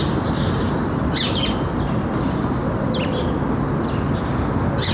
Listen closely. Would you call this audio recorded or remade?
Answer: recorded